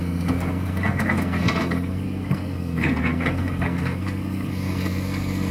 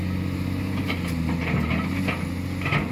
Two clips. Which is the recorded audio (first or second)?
second